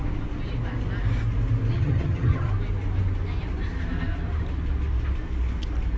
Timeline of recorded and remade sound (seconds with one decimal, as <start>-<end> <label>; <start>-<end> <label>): 0.0-1.7 recorded; 1.7-2.5 remade; 2.5-6.0 recorded